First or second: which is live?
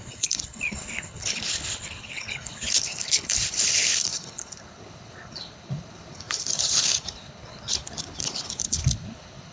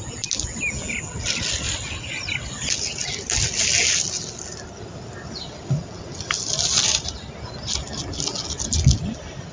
second